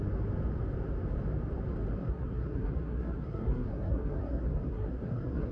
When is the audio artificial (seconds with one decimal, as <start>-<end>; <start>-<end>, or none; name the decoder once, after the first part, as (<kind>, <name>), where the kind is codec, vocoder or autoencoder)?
2.0-5.5 (codec, SNAC)